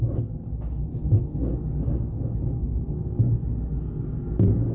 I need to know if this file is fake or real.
real